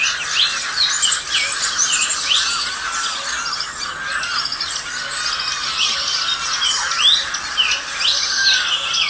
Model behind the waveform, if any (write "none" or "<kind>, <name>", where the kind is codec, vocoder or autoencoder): none